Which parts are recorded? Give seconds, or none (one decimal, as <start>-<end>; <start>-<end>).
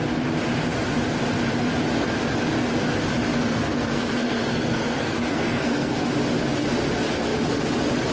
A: 0.0-3.3; 6.1-8.1